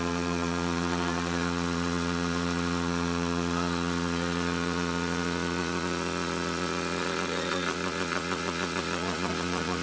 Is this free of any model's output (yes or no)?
no